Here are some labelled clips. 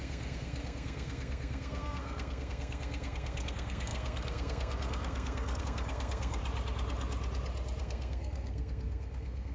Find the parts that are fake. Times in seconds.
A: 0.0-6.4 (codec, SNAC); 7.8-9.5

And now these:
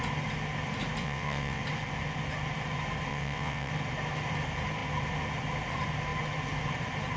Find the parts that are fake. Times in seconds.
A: 1.0-1.6 (vocoder, WaveNeXt); 3.1-3.7

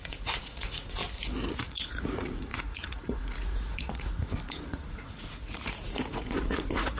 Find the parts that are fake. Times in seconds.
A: 0.0-1.0 (vocoder, Vocos); 1.5-7.0

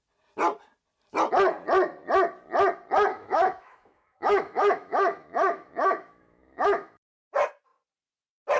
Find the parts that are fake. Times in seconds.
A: 3.1-7.2 (autoencoder, DAC-VAE)

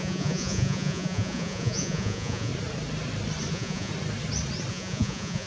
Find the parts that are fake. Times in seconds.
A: 0.0-2.5 (vocoder, Vocos); 3.5-3.9; 4.7-5.5

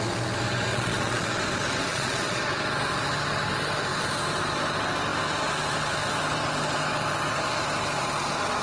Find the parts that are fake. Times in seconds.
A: 0.7-1.3 (vocoder, Vocos); 1.9-2.4

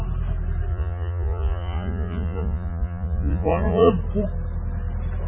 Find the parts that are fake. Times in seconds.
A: 0.7-3.9 (vocoder, Vocos)

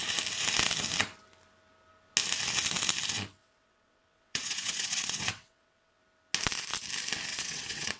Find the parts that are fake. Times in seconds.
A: 3.4-6.0 (vocoder, WaveNeXt); 7.3-8.0